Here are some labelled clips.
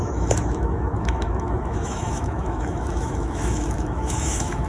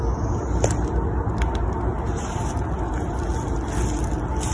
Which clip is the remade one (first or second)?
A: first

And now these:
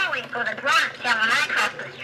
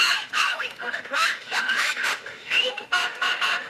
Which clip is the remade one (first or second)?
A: second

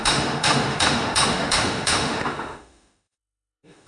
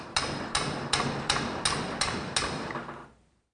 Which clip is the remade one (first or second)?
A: first